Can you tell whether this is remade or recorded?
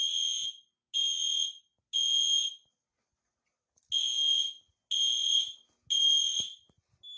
recorded